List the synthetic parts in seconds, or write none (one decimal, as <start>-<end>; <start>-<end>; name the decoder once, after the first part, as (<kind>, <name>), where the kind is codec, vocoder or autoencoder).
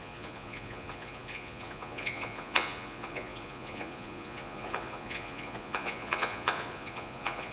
0.0-7.5 (vocoder, Vocos)